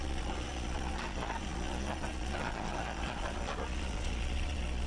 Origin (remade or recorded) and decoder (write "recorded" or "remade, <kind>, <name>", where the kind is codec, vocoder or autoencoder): remade, vocoder, Vocos